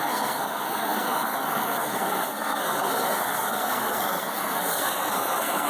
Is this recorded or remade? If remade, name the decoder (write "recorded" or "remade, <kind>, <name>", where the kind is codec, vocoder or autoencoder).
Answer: remade, codec, SNAC